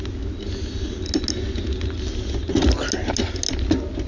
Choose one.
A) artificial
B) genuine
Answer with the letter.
B